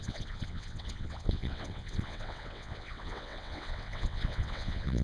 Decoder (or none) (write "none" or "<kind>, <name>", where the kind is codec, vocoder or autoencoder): vocoder, WaveNeXt